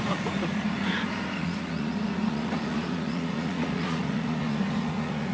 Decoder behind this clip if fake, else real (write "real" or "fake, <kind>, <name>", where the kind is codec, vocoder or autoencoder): fake, vocoder, Vocos